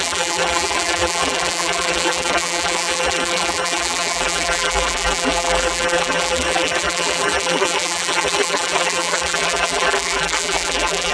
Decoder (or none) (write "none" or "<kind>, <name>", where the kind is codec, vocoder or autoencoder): vocoder, BigVGAN v2